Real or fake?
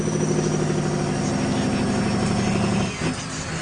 real